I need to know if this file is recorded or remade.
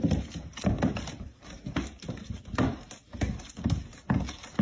recorded